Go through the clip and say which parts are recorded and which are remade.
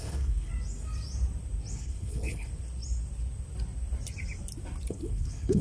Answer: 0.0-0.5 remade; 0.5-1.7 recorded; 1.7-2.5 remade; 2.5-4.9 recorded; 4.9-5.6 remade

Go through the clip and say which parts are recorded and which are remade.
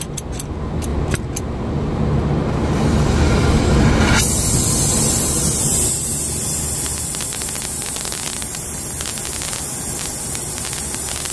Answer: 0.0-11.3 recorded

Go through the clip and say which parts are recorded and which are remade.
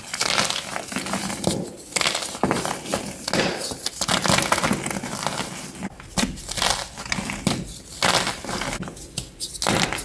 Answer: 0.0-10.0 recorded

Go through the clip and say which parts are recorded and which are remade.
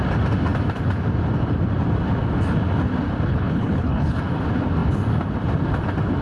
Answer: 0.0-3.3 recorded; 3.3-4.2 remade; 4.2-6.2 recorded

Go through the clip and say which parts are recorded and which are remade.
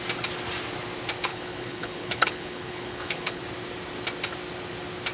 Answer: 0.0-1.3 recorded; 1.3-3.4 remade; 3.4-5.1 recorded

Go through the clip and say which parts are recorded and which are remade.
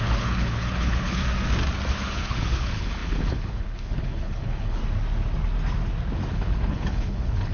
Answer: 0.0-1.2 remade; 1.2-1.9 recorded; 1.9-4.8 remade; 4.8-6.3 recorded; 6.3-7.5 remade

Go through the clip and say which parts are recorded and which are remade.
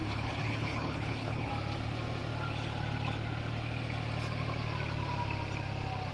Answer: 0.0-1.5 remade; 1.5-6.1 recorded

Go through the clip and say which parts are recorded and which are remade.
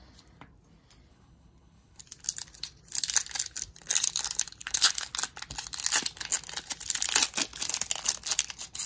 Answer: 0.0-1.1 recorded; 1.1-2.0 remade; 2.0-4.6 recorded; 4.6-5.1 remade; 5.1-8.9 recorded